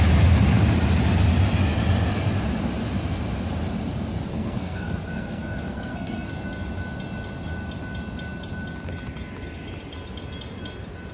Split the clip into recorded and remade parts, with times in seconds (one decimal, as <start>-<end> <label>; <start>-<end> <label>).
0.0-4.3 recorded; 4.3-6.3 remade; 6.3-11.1 recorded